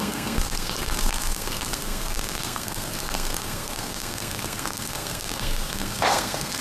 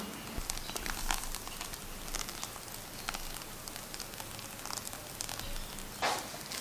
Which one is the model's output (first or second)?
first